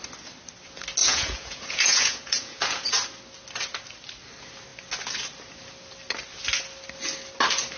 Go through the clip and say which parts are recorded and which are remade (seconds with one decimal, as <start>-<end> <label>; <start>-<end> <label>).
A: 0.0-1.0 recorded; 1.0-2.9 remade; 2.9-7.8 recorded